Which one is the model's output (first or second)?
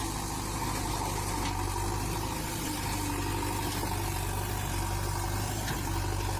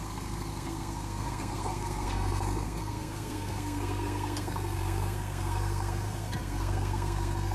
second